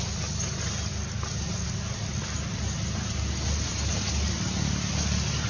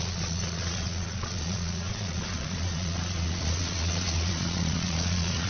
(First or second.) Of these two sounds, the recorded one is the first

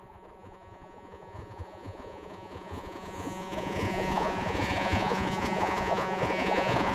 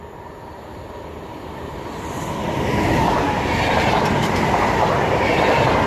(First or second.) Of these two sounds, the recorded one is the second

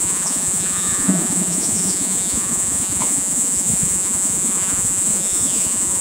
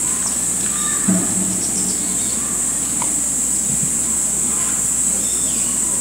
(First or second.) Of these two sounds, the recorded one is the second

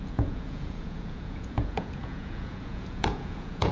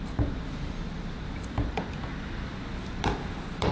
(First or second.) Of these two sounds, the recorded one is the second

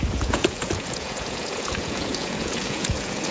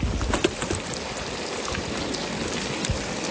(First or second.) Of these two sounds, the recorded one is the second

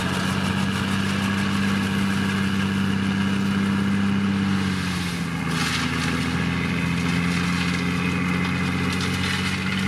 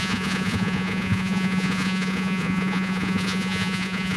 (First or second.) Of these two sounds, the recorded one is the first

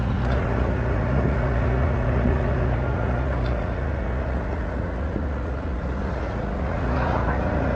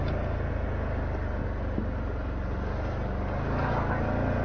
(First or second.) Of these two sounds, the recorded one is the second